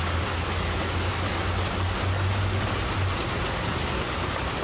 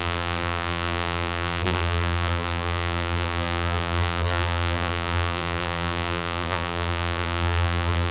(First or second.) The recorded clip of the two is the first